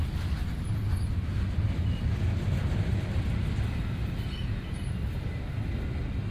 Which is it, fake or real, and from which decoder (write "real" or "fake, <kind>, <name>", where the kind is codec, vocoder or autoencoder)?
real